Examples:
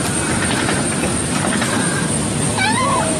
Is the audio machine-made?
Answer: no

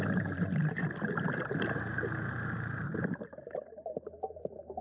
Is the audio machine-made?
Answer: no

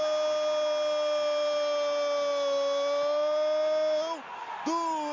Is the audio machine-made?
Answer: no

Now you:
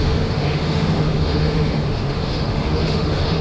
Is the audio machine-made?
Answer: yes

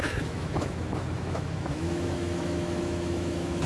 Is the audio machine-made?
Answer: yes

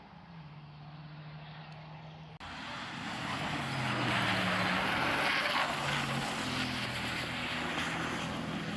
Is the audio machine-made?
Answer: no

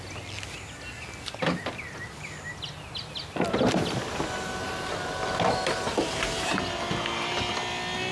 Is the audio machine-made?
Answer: no